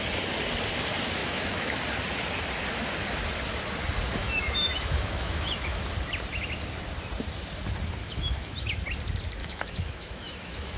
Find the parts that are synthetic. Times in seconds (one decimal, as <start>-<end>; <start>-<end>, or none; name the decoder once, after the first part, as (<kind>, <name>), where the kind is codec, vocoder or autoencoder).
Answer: 1.2-1.8 (autoencoder, DAC-VAE); 4.2-5.8; 8.0-8.8; 9.4-10.8